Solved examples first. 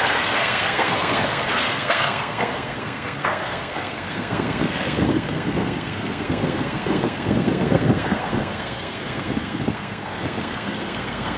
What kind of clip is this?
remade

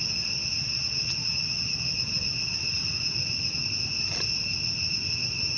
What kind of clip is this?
recorded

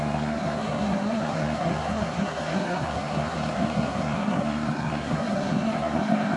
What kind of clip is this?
remade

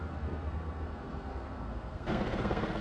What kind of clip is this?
remade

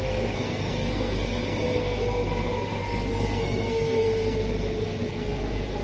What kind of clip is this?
remade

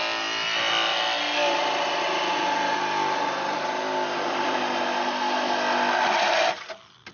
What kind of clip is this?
recorded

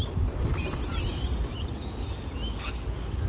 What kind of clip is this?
recorded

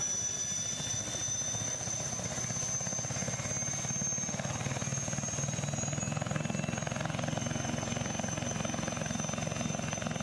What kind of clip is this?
recorded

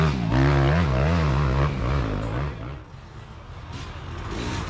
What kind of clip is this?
recorded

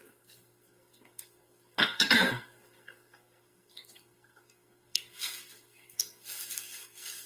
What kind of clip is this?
remade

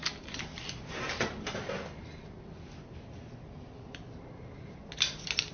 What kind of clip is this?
recorded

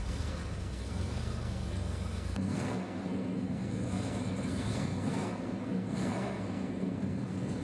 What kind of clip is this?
remade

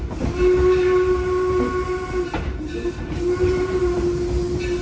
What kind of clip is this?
recorded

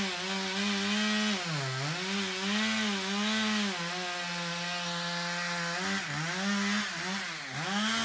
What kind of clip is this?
recorded